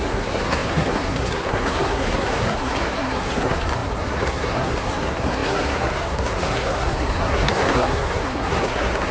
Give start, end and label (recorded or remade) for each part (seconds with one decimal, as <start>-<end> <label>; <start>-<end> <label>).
0.0-9.1 remade